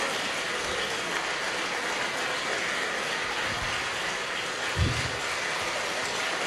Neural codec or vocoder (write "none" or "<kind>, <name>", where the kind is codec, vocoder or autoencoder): none